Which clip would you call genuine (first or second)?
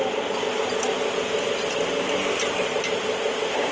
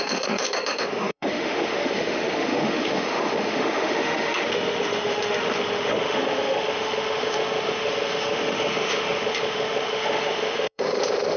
first